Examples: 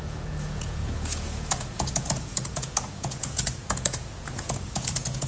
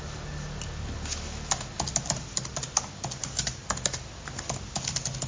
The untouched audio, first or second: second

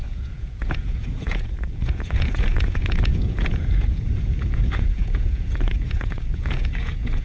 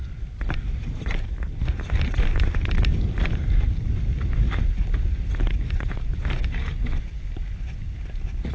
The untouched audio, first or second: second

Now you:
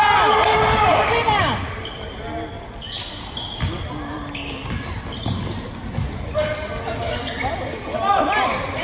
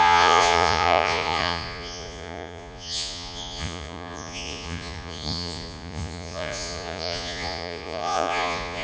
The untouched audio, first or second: first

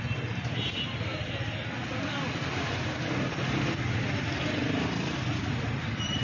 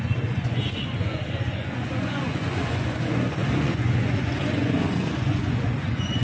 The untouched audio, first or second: first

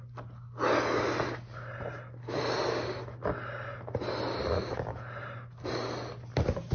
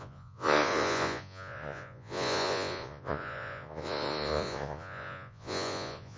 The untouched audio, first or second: first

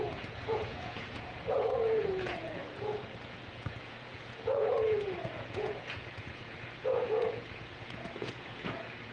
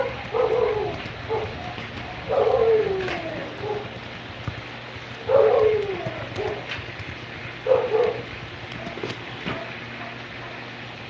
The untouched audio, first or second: second